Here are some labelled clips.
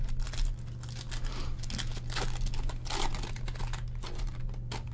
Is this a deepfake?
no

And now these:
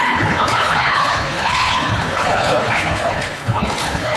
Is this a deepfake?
yes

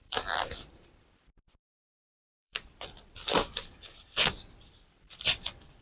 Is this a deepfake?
yes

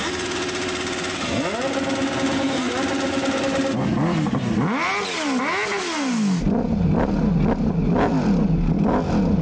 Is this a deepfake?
no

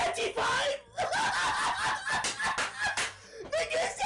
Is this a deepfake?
no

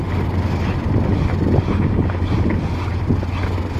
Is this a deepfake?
no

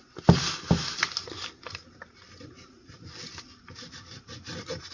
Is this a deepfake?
no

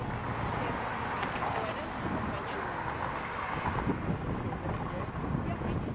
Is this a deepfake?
no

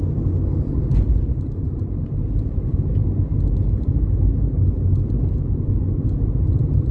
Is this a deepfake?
no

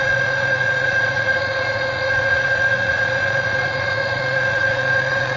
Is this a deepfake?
yes